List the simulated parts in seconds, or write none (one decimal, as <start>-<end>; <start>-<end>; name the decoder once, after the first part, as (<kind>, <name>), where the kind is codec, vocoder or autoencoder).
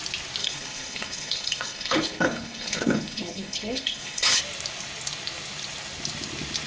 0.4-4.4 (codec, HILCodec)